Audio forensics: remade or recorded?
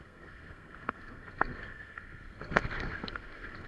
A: remade